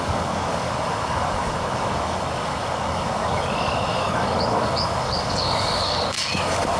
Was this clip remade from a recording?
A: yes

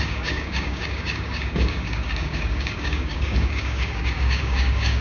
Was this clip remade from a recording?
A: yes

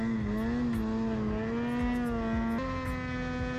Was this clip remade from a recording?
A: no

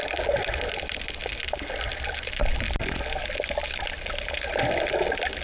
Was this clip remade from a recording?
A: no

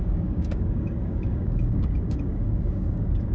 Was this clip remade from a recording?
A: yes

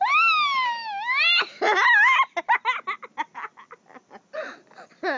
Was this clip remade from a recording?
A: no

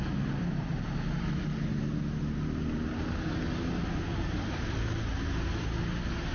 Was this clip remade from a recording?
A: no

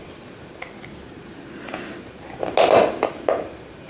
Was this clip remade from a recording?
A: no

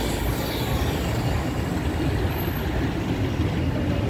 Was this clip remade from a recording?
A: no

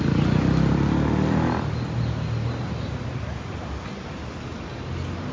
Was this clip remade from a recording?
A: no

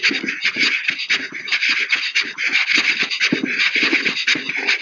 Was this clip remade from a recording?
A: no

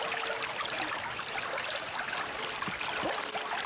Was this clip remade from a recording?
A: no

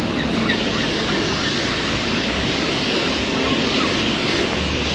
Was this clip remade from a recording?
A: yes